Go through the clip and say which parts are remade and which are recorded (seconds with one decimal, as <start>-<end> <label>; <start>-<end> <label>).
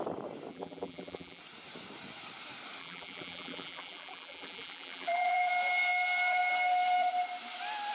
0.0-0.5 recorded; 0.5-1.4 remade; 1.4-2.8 recorded; 2.8-5.5 remade; 5.5-7.9 recorded